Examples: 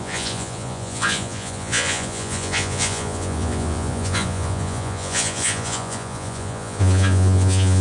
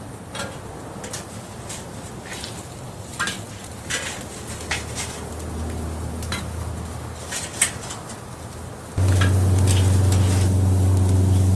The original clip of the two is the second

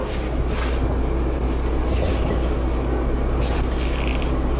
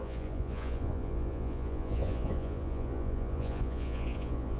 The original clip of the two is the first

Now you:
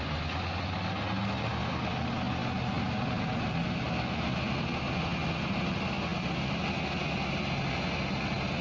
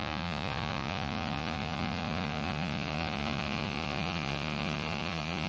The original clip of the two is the first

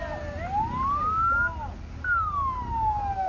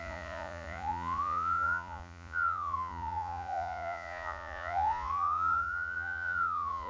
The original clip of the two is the first